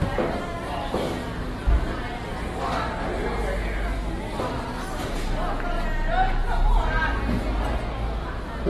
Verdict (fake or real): real